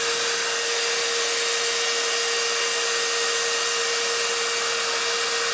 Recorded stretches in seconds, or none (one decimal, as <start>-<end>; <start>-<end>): 0.0-5.5